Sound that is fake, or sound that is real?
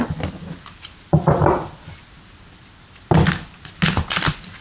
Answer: real